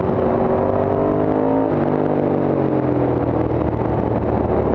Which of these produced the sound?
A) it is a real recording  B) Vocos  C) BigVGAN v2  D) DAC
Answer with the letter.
A